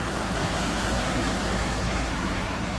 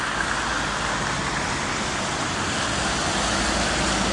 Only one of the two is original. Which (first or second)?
second